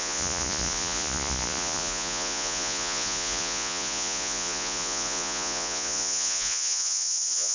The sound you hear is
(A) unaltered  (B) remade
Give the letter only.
B